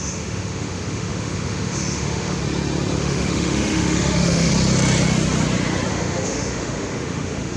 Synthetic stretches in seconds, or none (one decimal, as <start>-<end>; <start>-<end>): 0.0-2.4; 3.0-4.5; 5.9-7.6